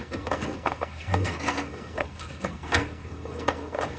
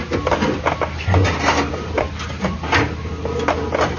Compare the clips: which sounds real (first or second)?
second